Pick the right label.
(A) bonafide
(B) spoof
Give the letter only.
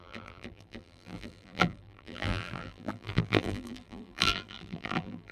B